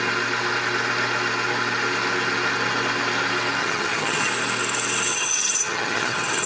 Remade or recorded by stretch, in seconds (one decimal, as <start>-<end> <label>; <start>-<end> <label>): 0.0-3.6 recorded; 3.6-4.3 remade; 4.3-5.1 recorded; 5.1-6.5 remade

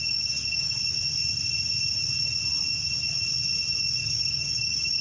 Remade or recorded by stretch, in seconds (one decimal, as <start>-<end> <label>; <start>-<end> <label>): 0.0-0.8 remade; 0.8-3.8 recorded; 3.8-5.0 remade

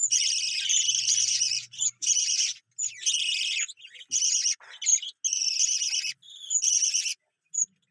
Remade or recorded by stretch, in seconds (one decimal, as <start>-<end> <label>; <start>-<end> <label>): 0.0-0.9 recorded; 0.9-2.4 remade; 2.4-7.9 recorded

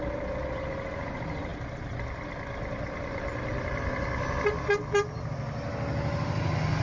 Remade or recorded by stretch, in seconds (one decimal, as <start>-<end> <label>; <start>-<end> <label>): 0.0-6.8 recorded

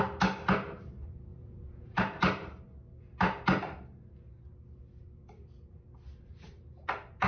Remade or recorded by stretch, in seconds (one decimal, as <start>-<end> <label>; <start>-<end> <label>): 0.0-1.3 recorded; 1.3-2.0 remade; 2.0-7.3 recorded